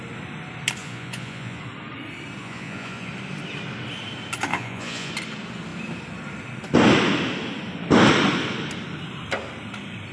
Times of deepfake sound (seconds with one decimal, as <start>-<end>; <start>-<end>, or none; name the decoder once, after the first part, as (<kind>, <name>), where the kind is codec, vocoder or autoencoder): 0.8-1.6 (vocoder, Vocos); 2.4-3.1; 4.5-5.1